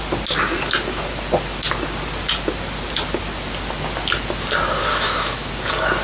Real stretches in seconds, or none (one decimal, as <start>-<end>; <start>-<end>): 0.0-4.9; 5.5-6.0